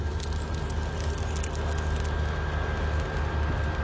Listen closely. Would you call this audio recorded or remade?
recorded